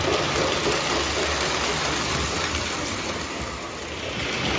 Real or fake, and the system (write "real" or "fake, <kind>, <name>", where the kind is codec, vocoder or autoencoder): real